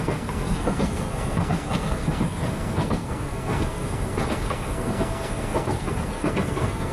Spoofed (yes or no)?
yes